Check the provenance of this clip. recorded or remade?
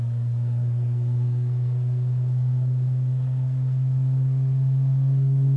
remade